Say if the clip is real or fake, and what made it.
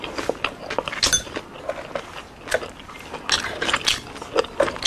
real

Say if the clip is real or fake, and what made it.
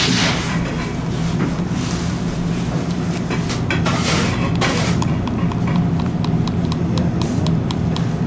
real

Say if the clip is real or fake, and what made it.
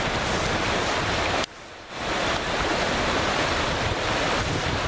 real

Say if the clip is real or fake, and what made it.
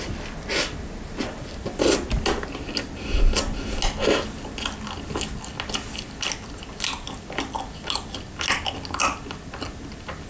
real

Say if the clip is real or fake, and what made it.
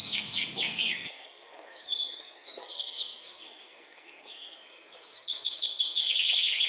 fake, codec, SNAC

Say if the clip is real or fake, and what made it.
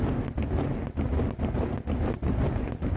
real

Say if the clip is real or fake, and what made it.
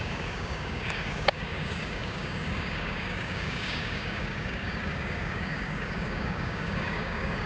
fake, codec, DAC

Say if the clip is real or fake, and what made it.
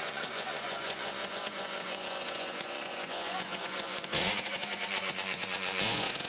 fake, vocoder, Vocos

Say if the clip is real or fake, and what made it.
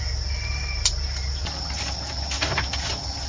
real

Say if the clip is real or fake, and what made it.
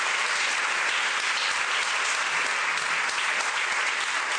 real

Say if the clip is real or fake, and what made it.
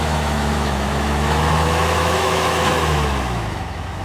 fake, autoencoder, DAC-VAE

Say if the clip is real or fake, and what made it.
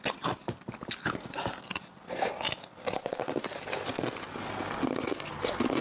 real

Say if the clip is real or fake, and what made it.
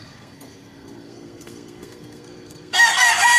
fake, codec, SNAC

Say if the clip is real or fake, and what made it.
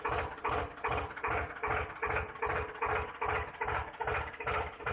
real